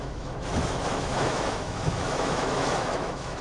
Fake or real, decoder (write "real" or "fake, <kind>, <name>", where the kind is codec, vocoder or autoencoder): fake, autoencoder, DAC-VAE